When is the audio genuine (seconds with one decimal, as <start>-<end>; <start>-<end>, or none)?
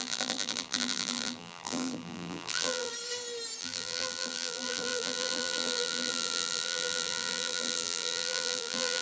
2.9-3.6